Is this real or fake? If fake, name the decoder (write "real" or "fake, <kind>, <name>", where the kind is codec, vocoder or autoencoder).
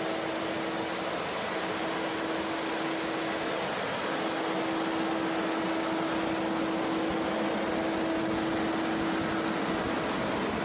real